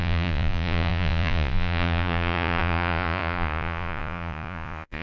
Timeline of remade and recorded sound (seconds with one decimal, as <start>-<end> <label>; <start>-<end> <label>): 0.0-5.0 remade